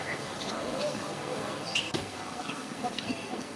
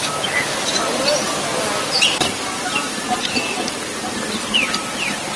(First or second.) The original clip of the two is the second